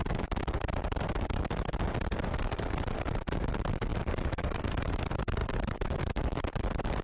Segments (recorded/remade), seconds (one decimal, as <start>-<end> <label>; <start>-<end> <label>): 0.0-3.9 recorded; 3.9-5.0 remade; 5.0-5.4 recorded; 5.4-6.0 remade; 6.0-7.0 recorded